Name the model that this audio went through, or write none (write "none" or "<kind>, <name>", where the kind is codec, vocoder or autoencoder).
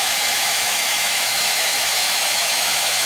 autoencoder, DAC-VAE